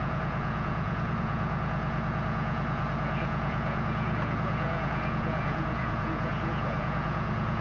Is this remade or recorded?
remade